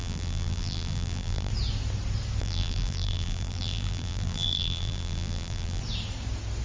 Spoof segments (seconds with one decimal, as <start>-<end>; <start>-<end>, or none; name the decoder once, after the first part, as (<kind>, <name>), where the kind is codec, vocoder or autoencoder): 0.0-1.5 (vocoder, BigVGAN v2); 2.4-5.8